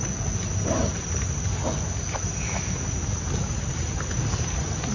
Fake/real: real